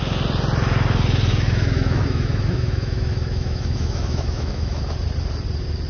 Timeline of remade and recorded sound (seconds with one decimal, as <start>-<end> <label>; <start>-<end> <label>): 0.0-1.3 recorded; 1.3-4.8 remade; 4.8-5.9 recorded